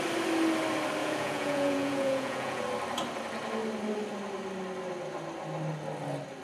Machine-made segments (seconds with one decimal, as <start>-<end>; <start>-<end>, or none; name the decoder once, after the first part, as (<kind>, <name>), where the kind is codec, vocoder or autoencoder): 1.0-2.6 (vocoder, Vocos)